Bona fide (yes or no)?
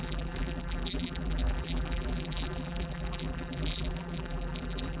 no